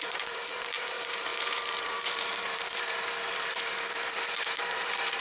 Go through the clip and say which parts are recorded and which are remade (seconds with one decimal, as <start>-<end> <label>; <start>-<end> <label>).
0.0-5.2 remade

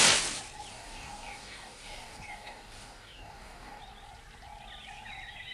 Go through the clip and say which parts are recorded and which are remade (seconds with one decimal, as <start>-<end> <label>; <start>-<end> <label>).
0.0-0.7 recorded; 0.7-3.8 remade; 3.8-5.5 recorded

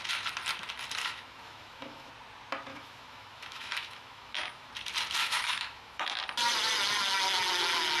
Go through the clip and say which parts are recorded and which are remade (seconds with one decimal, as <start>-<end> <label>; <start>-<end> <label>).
0.0-1.0 recorded; 1.0-2.1 remade; 2.1-2.7 recorded; 2.7-4.7 remade; 4.7-5.2 recorded; 5.2-6.2 remade; 6.2-8.0 recorded

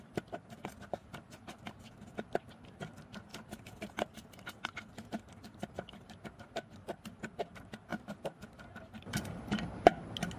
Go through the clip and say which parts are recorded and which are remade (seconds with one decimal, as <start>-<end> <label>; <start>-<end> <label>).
0.0-10.4 recorded

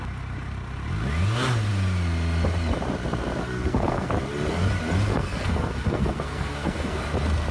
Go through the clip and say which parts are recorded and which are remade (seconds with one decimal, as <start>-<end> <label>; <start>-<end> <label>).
0.0-3.4 recorded; 3.4-4.1 remade; 4.1-5.1 recorded; 5.1-7.0 remade; 7.0-7.5 recorded

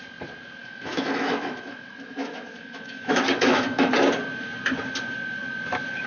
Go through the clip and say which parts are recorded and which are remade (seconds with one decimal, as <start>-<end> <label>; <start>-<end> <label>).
0.0-0.6 recorded; 0.6-3.9 remade; 3.9-6.1 recorded